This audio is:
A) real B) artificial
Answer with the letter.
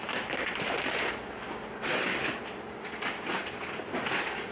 A